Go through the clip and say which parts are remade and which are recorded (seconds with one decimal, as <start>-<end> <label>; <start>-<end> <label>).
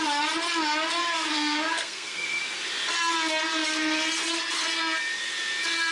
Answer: 0.0-1.0 recorded; 1.0-2.4 remade; 2.4-5.9 recorded